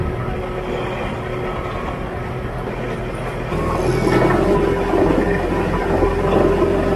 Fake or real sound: real